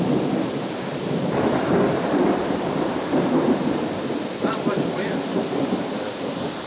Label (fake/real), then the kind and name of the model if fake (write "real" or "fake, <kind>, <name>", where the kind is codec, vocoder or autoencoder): fake, vocoder, BigVGAN v2